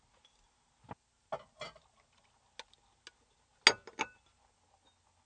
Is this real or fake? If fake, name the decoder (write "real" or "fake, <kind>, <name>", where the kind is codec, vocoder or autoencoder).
real